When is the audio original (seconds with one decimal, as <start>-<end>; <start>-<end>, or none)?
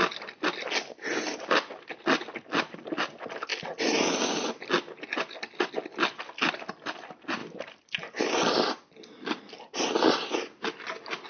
0.0-11.3